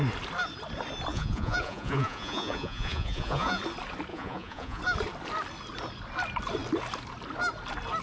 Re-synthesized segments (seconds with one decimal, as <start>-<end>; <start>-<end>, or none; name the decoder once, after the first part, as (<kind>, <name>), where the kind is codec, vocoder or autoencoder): 1.1-3.6 (vocoder, Vocos); 4.1-4.8